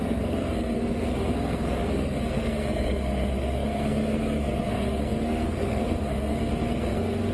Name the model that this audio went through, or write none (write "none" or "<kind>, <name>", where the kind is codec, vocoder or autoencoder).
codec, SNAC